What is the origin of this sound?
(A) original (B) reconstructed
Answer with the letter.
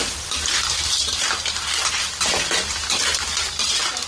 A